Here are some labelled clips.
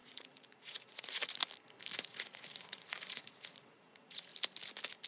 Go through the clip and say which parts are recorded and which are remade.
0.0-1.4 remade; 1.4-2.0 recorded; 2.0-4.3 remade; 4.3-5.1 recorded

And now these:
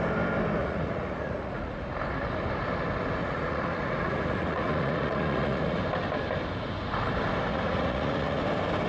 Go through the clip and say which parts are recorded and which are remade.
0.0-0.6 recorded; 0.6-1.9 remade; 1.9-3.2 recorded; 3.2-5.8 remade; 5.8-7.5 recorded; 7.5-8.4 remade; 8.4-8.9 recorded

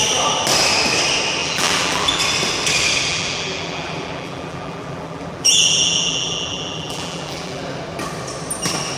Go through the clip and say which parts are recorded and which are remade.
0.0-1.4 recorded; 1.4-2.2 remade; 2.2-3.1 recorded; 3.1-7.6 remade; 7.6-9.0 recorded

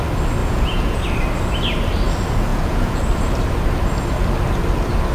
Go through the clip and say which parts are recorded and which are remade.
0.0-0.4 recorded; 0.4-1.0 remade; 1.0-2.5 recorded; 2.5-3.0 remade; 3.0-5.1 recorded

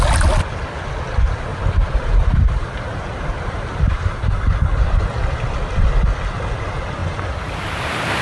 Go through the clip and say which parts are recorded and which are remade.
0.0-1.5 recorded; 1.5-4.4 remade; 4.4-7.0 recorded; 7.0-8.2 remade